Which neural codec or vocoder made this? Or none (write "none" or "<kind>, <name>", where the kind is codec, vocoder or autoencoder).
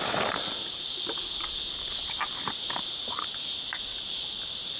none